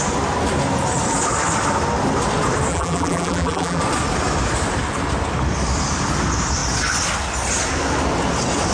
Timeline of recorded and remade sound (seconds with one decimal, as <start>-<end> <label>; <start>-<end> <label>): 0.0-2.7 recorded; 2.7-3.8 remade; 3.8-8.7 recorded